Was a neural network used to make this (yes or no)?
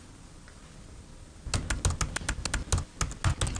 no